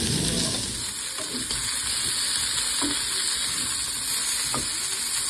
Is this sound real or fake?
real